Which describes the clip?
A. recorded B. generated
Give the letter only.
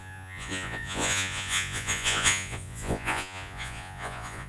B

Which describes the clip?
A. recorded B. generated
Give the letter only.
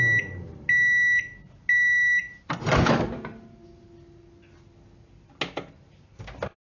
A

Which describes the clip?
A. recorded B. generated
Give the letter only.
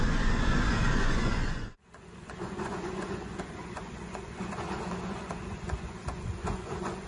B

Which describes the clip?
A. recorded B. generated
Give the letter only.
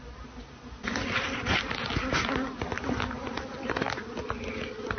A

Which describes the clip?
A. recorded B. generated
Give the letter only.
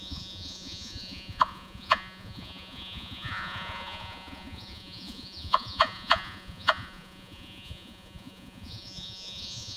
B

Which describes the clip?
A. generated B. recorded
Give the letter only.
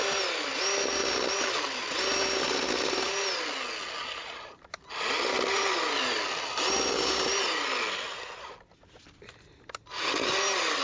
B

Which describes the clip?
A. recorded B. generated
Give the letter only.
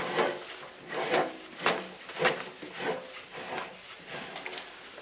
A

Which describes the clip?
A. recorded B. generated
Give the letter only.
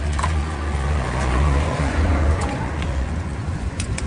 B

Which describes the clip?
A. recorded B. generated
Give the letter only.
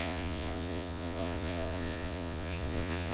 B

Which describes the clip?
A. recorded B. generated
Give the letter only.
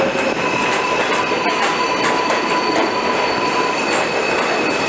A